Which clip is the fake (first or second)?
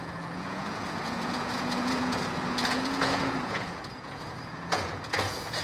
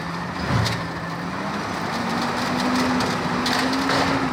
first